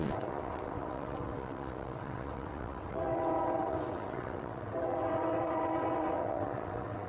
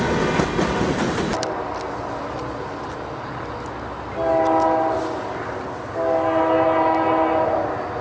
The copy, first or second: first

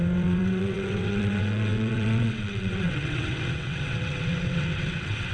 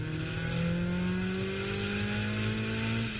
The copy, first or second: first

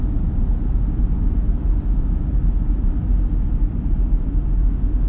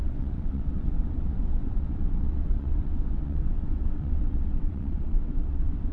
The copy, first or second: second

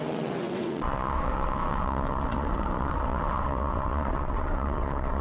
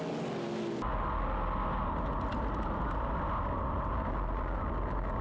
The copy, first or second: first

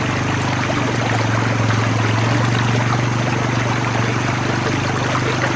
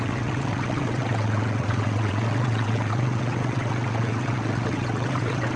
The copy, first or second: second